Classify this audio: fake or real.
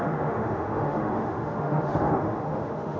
fake